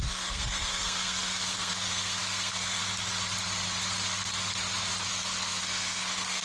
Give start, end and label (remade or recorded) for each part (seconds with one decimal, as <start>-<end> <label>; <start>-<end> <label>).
0.0-2.8 remade; 2.8-5.1 recorded; 5.1-6.4 remade

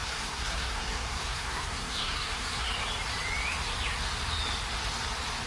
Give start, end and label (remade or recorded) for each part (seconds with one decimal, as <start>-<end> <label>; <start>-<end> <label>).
0.0-2.7 remade; 2.7-5.5 recorded

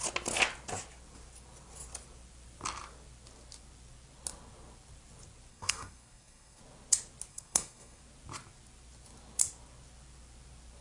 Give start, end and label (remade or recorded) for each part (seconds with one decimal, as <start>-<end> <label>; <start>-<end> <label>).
0.0-5.5 recorded; 5.5-6.6 remade; 6.6-7.3 recorded; 7.3-8.0 remade; 8.0-10.8 recorded

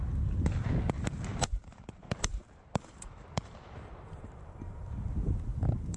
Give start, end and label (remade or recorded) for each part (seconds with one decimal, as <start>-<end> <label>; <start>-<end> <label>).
0.0-1.3 recorded; 1.3-4.9 remade; 4.9-5.5 recorded; 5.5-6.0 remade

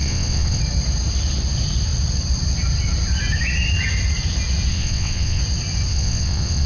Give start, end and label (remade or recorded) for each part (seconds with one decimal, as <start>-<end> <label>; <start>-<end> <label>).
0.0-0.6 remade; 0.6-4.7 recorded; 4.7-5.4 remade; 5.4-5.9 recorded; 5.9-6.7 remade

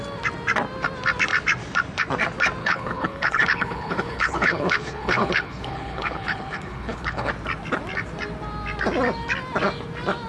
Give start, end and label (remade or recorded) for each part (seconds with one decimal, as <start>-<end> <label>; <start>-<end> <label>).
0.0-2.6 recorded; 2.6-7.3 remade; 7.3-10.3 recorded

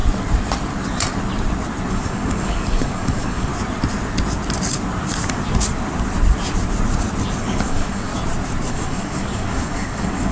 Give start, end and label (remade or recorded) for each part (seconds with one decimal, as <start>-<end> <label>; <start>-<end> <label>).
0.0-1.9 recorded; 1.9-3.5 remade; 3.5-7.4 recorded; 7.4-8.1 remade; 8.1-8.7 recorded; 8.7-10.3 remade

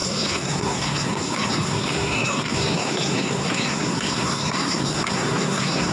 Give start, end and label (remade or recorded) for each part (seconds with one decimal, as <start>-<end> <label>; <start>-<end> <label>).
0.0-5.9 remade